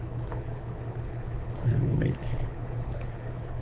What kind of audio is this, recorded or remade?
remade